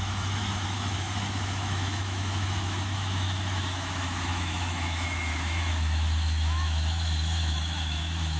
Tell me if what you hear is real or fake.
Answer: fake